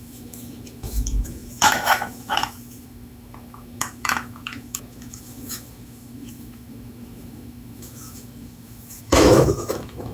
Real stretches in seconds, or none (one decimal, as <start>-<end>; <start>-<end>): none